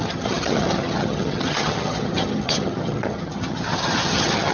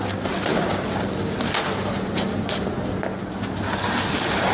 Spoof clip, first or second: first